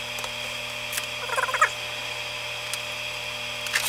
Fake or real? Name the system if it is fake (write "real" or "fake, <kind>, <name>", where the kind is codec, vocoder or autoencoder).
real